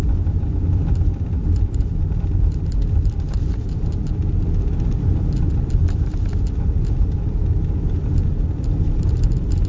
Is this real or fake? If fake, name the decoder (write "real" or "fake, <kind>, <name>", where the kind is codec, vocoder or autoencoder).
real